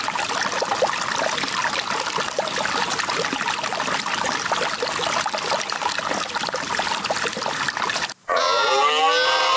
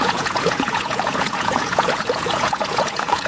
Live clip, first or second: first